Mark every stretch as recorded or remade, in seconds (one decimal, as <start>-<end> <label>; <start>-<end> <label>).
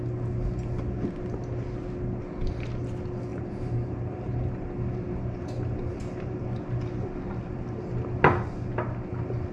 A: 0.0-3.3 recorded; 3.3-6.4 remade; 6.4-9.5 recorded